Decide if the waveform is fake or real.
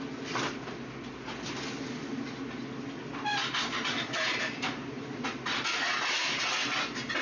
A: real